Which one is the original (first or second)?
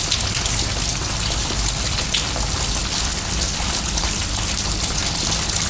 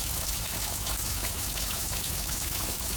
first